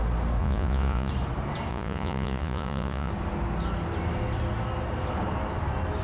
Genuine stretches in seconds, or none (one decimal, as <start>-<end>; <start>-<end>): 0.0-0.4; 1.1-1.7; 3.1-6.0